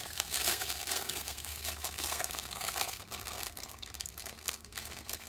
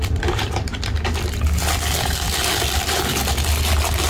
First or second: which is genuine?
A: second